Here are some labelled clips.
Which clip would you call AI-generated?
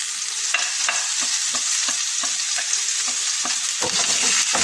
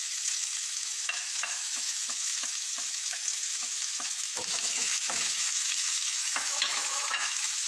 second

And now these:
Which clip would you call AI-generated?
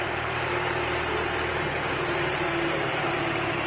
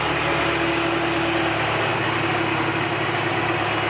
first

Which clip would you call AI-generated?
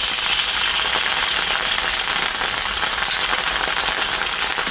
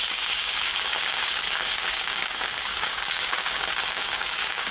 second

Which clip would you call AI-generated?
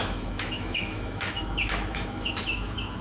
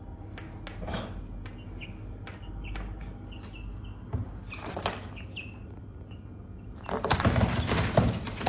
first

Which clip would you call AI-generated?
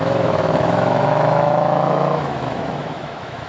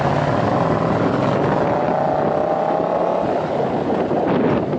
first